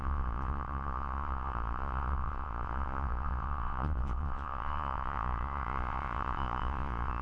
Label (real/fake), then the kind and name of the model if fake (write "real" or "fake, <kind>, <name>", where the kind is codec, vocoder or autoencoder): fake, vocoder, Vocos